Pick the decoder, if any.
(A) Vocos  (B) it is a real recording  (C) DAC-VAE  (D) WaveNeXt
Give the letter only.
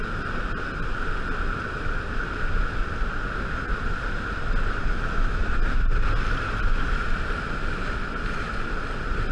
B